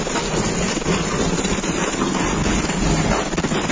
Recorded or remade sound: recorded